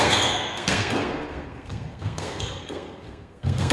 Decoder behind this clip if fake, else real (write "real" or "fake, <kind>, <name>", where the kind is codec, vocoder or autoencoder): fake, codec, SNAC